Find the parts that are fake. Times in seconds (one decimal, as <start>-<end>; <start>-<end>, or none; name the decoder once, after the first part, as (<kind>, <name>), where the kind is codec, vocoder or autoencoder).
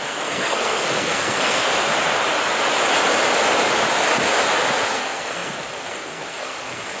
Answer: 0.0-1.9 (codec, SNAC); 4.9-7.0